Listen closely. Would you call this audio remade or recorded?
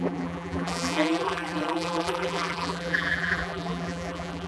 remade